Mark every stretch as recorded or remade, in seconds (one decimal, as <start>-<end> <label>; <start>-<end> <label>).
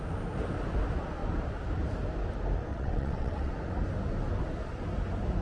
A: 0.0-2.7 recorded; 2.7-3.5 remade; 3.5-5.4 recorded